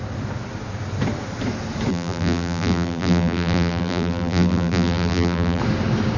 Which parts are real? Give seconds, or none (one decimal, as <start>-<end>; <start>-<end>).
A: 0.0-1.9; 5.6-6.2